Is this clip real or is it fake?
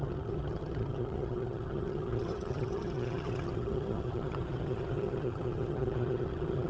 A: fake